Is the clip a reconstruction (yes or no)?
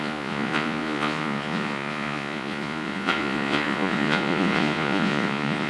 yes